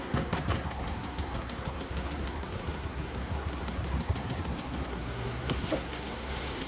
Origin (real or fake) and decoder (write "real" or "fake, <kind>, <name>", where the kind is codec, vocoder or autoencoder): fake, codec, SNAC